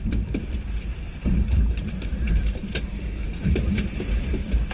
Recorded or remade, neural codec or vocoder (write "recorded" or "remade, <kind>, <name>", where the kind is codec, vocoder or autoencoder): remade, vocoder, BigVGAN v2